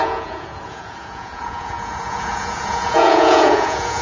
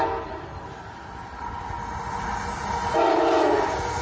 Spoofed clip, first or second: first